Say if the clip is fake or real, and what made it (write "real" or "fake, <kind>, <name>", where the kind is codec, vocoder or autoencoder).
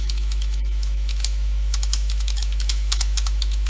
fake, autoencoder, DAC-VAE